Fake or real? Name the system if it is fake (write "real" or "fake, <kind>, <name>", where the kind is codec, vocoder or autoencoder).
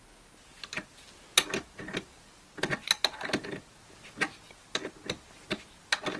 real